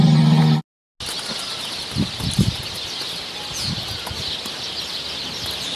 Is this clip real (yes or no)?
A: yes